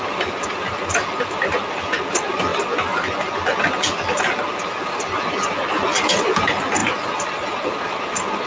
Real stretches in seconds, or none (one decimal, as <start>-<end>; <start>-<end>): 0.0-8.5